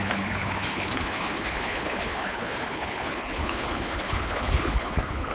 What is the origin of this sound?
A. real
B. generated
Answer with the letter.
B